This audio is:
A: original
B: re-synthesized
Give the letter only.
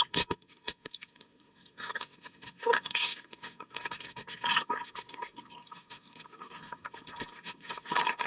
B